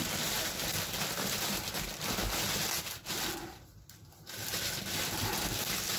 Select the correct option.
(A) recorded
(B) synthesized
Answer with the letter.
A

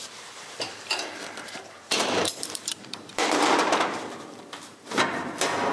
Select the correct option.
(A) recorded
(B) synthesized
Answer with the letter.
B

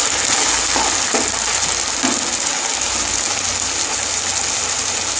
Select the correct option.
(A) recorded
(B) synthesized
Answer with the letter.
A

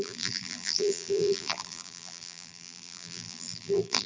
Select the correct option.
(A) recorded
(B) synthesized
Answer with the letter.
B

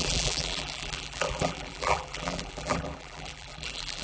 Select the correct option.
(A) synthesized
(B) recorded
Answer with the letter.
A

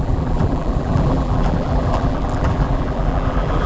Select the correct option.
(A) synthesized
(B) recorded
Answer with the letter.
A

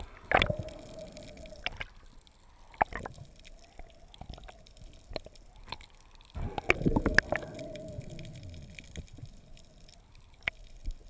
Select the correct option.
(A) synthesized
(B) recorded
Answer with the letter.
B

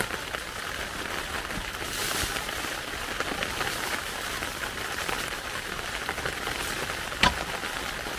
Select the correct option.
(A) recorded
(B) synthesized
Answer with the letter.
B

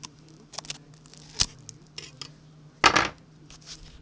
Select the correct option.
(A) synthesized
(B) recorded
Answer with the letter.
B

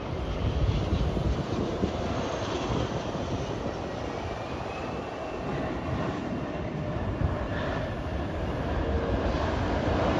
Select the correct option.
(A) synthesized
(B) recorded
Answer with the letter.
A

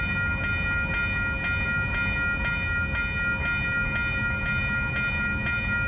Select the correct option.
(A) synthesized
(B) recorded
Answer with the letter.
B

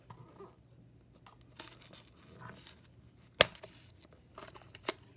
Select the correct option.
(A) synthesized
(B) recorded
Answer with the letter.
B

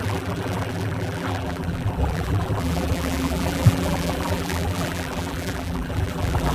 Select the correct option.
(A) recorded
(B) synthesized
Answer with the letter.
B